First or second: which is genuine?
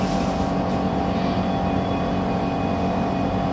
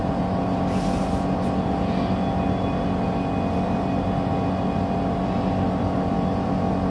second